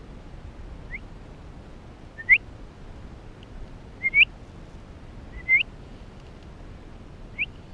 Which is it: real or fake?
real